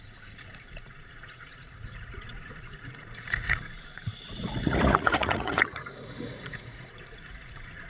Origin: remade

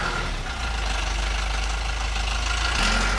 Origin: recorded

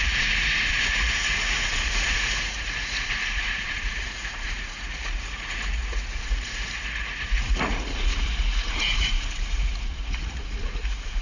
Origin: remade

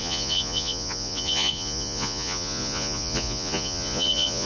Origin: remade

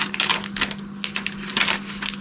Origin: recorded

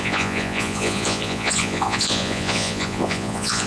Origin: remade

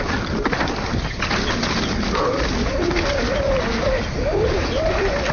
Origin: recorded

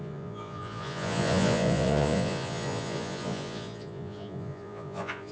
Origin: remade